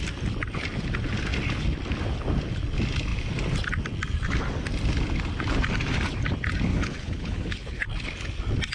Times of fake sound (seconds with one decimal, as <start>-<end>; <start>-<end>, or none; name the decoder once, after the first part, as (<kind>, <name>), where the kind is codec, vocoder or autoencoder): 6.7-7.9 (codec, HILCodec)